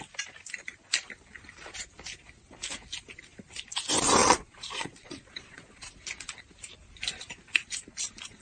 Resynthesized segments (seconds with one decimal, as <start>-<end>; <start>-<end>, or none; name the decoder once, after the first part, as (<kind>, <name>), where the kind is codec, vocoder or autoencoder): 4.2-6.0 (vocoder, Vocos)